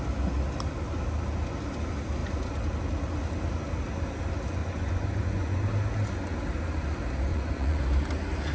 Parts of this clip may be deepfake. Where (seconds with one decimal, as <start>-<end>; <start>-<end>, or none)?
4.6-5.6; 7.3-7.8